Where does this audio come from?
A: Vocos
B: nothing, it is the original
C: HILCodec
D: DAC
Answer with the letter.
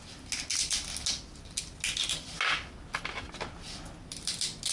B